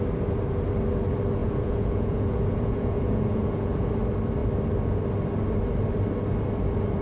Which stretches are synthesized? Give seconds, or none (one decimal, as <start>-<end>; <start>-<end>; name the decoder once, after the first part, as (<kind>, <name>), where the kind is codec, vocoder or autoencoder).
1.4-3.9 (vocoder, Vocos)